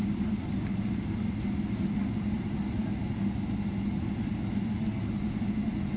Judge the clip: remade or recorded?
recorded